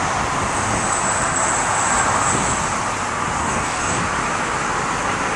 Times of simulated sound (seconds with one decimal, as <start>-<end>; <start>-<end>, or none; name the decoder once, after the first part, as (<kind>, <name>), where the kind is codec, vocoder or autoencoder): 3.4-4.0 (codec, DAC)